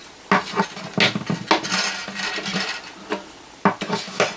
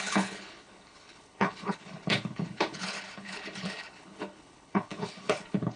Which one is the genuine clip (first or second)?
first